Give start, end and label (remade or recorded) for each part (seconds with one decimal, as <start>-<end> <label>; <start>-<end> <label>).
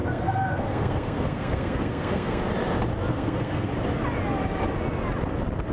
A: 0.0-2.4 remade; 2.4-3.1 recorded; 3.1-3.7 remade; 3.7-5.7 recorded